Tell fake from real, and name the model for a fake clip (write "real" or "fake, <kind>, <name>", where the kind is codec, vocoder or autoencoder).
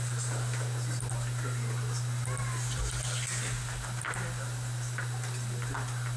real